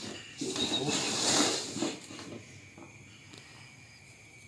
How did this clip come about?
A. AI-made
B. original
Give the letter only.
B